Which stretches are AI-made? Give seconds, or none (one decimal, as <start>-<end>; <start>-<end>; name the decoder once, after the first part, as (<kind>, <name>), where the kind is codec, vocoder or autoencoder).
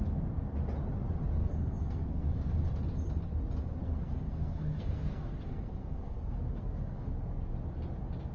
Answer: 1.4-2.3 (codec, SNAC); 3.8-7.1